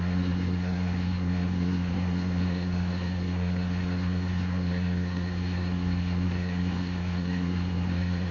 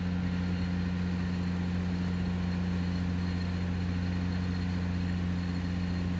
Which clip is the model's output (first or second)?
first